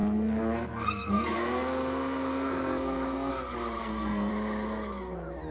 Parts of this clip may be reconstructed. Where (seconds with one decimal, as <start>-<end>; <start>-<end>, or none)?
0.0-3.3; 3.8-4.3

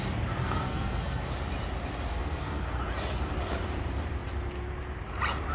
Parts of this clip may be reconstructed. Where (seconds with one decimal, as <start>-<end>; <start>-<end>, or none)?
0.4-1.3; 2.1-2.8

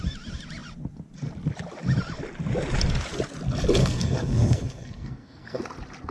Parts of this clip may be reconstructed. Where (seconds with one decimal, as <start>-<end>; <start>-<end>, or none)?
3.8-5.6

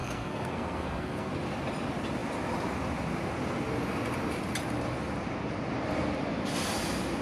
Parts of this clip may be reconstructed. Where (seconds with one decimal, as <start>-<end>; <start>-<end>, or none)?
0.0-1.3

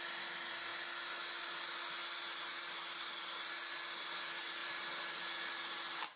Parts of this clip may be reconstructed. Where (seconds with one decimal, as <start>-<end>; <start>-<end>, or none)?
none

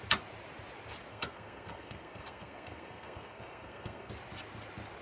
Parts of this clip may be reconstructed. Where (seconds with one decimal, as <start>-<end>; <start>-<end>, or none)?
1.1-4.1

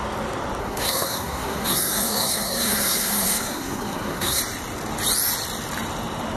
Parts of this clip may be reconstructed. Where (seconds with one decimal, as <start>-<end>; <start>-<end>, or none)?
0.6-4.4

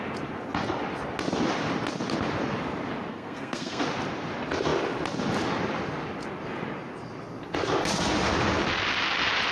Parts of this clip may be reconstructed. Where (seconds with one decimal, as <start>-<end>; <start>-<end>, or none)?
3.1-3.8